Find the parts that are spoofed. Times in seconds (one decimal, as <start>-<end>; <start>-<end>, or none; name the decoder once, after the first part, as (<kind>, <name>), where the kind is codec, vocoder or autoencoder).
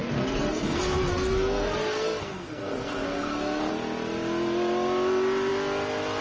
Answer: 0.0-3.7 (codec, SNAC)